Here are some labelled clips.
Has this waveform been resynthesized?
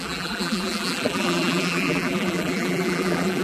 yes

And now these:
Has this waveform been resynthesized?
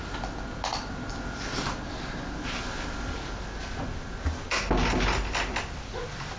no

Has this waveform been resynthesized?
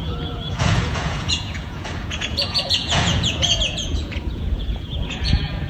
yes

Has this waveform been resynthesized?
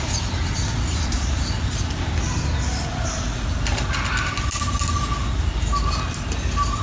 no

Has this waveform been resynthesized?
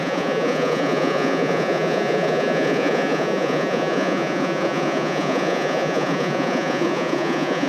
yes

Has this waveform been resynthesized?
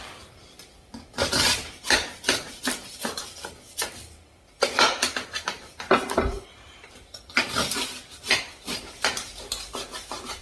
yes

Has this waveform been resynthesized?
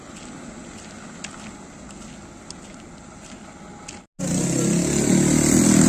no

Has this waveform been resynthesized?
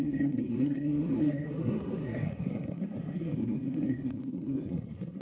yes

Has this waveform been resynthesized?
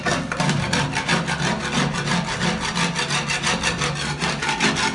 no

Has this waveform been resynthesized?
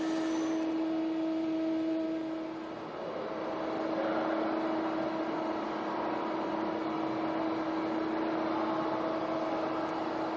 yes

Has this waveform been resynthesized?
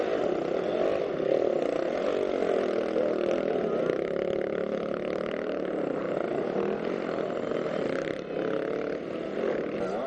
no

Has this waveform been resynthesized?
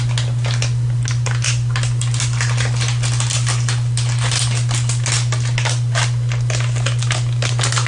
no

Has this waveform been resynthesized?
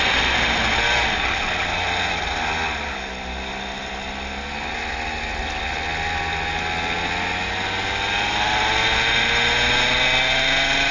no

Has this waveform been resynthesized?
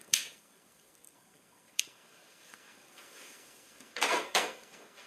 yes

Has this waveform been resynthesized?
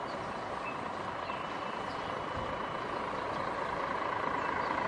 yes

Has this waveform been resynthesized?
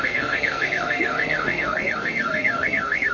yes